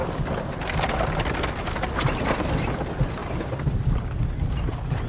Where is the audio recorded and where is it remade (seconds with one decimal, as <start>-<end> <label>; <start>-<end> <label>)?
0.0-5.1 recorded